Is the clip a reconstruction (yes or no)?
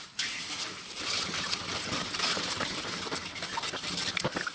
yes